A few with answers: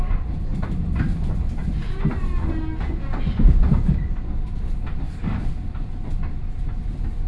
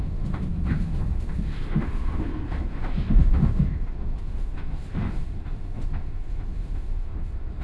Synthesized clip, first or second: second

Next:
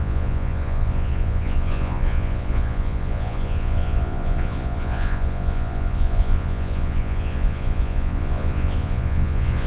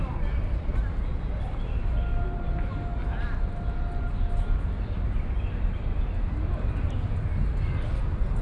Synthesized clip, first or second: first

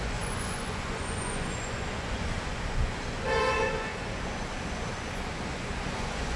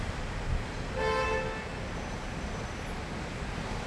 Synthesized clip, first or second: first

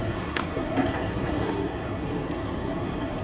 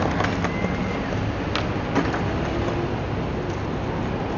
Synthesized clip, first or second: first